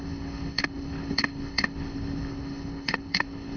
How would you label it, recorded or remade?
remade